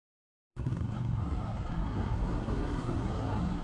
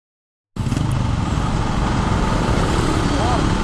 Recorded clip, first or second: second